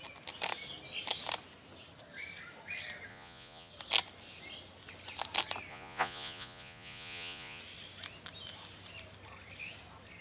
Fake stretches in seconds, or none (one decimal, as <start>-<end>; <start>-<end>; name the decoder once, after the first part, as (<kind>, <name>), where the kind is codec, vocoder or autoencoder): 3.1-3.7 (vocoder, Vocos); 5.7-7.6